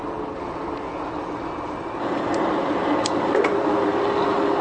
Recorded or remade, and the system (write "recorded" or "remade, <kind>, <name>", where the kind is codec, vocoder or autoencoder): recorded